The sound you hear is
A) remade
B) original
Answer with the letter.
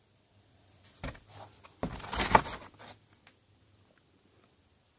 B